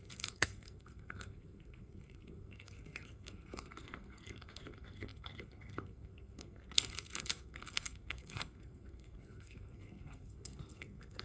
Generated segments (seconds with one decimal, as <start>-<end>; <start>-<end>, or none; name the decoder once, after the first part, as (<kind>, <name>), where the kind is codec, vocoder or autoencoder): 0.0-11.2 (codec, SNAC)